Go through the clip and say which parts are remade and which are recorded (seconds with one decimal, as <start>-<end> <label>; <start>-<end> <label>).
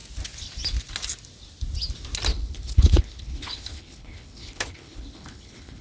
0.0-2.3 recorded; 2.3-5.8 remade